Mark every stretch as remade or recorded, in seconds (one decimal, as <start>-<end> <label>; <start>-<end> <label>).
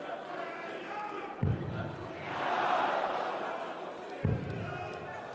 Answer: 0.0-5.3 recorded